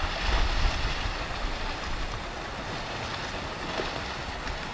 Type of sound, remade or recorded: recorded